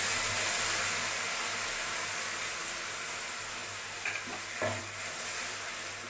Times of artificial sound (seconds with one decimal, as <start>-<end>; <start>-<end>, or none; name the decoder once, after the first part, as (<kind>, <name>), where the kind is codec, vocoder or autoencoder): none